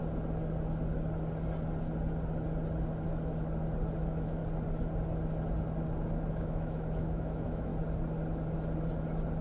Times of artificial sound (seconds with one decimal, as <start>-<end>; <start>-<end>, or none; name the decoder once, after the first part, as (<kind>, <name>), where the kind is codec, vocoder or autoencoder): 4.0-4.4 (autoencoder, DAC-VAE); 6.3-7.7